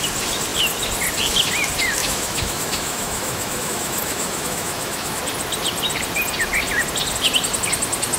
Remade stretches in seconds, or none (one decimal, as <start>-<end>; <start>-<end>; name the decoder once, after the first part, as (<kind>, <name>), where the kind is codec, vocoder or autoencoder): 2.0-5.2 (autoencoder, DAC-VAE)